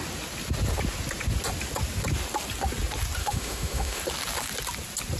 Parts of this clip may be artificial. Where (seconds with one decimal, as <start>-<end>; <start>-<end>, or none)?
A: 3.2-4.0